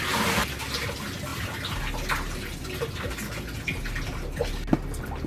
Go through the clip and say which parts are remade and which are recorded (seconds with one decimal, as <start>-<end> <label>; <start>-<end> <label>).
0.0-5.3 recorded